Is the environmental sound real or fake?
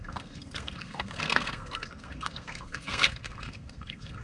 fake